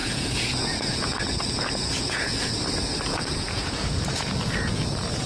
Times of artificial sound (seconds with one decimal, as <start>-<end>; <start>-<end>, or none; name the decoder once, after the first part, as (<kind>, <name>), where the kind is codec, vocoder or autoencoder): 0.0-2.6 (vocoder, Vocos); 3.1-5.3